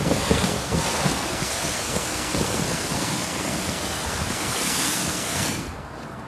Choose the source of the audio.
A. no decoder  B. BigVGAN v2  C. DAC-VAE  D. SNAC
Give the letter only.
D